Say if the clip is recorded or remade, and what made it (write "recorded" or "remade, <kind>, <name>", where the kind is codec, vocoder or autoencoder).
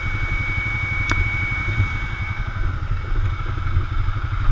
recorded